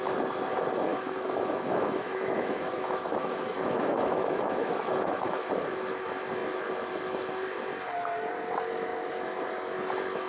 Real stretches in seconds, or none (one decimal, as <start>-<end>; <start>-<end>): 0.0-0.9; 5.5-10.3